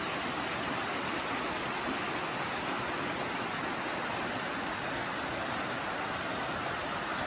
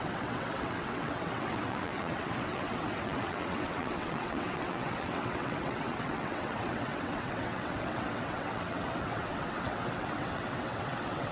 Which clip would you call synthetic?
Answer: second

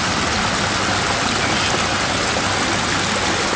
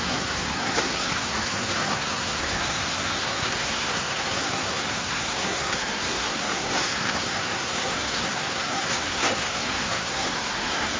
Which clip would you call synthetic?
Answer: second